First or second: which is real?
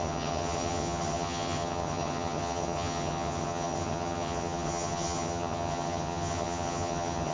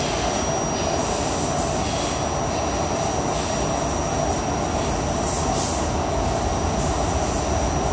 second